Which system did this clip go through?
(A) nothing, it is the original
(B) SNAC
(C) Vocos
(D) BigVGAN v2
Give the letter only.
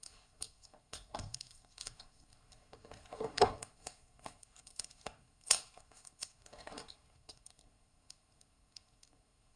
B